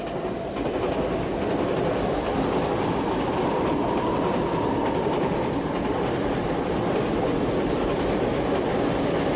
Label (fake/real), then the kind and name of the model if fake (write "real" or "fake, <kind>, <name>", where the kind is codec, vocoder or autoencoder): real